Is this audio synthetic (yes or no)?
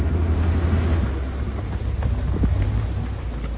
no